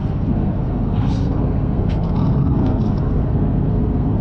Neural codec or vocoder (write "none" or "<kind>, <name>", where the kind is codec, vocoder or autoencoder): codec, SNAC